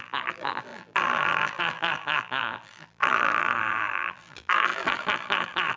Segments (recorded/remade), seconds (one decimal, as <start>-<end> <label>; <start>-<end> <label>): 0.0-5.8 remade